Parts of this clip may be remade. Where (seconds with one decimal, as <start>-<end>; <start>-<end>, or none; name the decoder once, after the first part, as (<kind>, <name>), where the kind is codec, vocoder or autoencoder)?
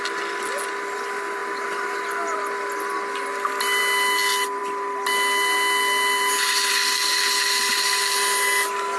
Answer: none